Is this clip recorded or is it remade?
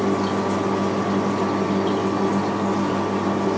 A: recorded